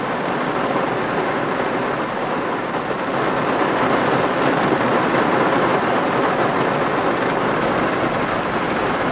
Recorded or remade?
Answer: recorded